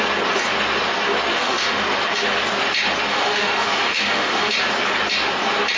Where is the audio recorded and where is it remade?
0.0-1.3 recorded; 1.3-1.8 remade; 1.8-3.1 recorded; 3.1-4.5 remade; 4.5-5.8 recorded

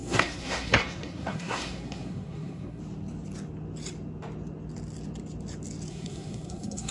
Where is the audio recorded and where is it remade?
0.0-2.8 remade; 2.8-5.9 recorded; 5.9-6.9 remade

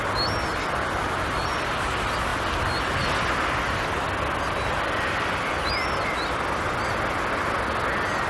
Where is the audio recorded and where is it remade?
0.0-8.3 recorded